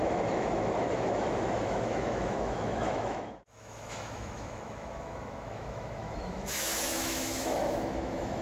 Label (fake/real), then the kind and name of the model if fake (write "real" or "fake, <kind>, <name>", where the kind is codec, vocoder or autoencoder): fake, autoencoder, DAC-VAE